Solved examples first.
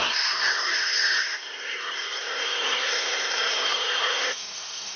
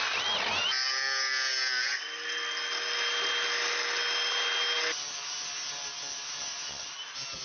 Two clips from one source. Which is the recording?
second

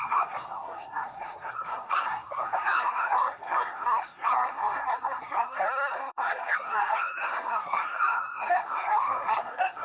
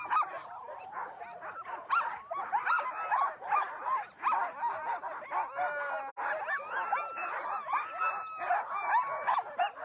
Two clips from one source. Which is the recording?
second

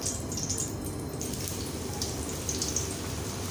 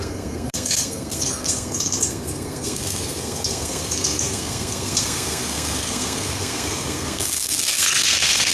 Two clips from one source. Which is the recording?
first